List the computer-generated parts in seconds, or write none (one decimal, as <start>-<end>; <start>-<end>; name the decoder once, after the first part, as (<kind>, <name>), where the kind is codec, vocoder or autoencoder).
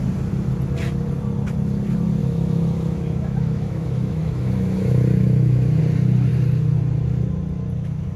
2.2-5.8 (autoencoder, DAC-VAE)